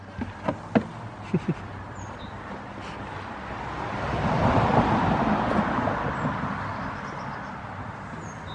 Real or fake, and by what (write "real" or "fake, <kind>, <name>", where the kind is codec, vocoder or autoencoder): real